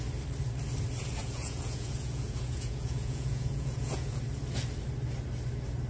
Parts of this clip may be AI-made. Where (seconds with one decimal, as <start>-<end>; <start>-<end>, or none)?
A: 1.2-4.2